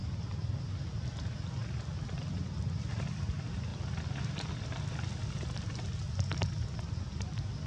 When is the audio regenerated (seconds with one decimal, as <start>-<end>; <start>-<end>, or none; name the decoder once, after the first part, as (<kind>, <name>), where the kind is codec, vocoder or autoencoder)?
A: 0.0-0.6 (vocoder, BigVGAN v2)